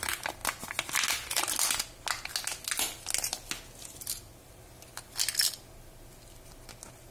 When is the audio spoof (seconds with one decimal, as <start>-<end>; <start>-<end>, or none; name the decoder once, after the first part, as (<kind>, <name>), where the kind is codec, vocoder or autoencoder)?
none